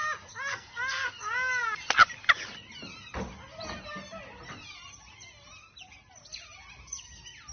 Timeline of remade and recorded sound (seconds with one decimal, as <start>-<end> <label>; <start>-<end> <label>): 0.0-0.5 recorded; 0.5-1.1 remade; 1.1-7.5 recorded